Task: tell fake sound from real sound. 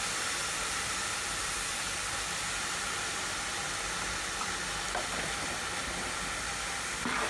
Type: real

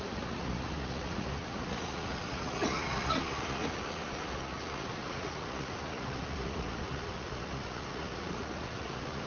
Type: fake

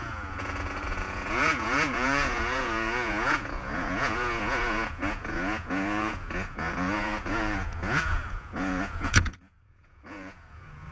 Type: fake